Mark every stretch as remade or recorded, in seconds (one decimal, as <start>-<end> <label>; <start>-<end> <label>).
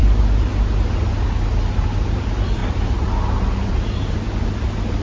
0.0-2.6 recorded; 2.6-3.7 remade; 3.7-5.0 recorded